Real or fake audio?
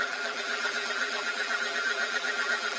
fake